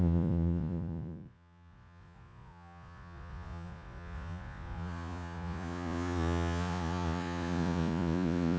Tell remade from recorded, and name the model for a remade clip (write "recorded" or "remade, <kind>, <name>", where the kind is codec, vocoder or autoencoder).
remade, vocoder, Vocos